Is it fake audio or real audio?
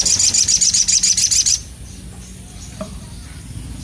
real